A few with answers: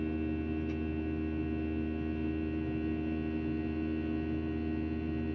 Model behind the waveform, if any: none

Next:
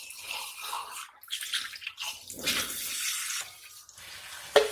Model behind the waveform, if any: none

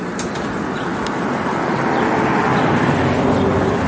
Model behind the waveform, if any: none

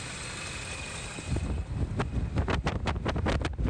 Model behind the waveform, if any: none